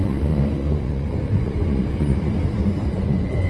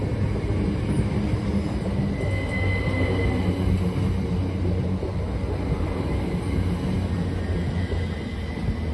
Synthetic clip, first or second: first